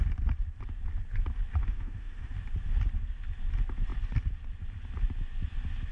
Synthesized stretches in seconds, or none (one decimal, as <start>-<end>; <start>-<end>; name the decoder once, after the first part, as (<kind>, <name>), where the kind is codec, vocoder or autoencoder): 1.6-2.3 (autoencoder, DAC-VAE)

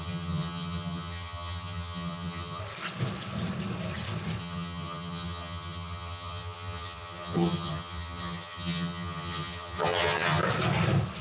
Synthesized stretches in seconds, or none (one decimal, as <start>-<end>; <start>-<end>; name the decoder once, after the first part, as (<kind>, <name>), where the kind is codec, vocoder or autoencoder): 0.0-2.6 (vocoder, HiFi-GAN); 4.4-10.4

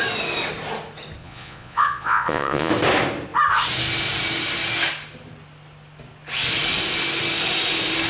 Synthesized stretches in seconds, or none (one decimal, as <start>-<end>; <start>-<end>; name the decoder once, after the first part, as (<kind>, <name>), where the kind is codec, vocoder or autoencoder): 1.2-2.7 (vocoder, Vocos)

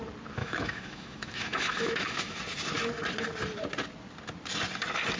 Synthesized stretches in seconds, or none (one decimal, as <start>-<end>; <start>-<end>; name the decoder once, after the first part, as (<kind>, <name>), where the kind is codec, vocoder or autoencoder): 0.4-2.4 (autoencoder, DAC-VAE)

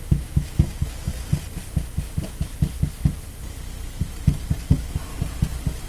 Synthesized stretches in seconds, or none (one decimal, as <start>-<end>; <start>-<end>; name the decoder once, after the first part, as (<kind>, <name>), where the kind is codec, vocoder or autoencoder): 0.0-1.1 (autoencoder, DAC-VAE); 4.6-5.1

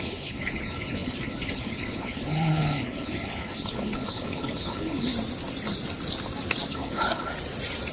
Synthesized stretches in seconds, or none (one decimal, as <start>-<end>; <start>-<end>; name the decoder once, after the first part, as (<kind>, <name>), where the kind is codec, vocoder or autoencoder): 0.0-5.1 (codec, HILCodec); 6.7-7.3

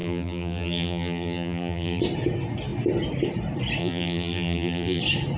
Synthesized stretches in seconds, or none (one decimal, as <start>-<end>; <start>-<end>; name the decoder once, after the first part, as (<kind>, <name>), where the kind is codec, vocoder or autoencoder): 0.0-2.0 (vocoder, BigVGAN v2); 3.8-5.0